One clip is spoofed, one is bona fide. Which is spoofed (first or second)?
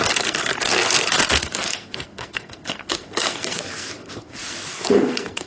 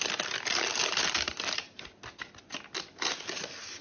first